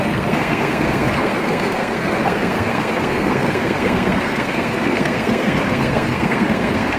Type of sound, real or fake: fake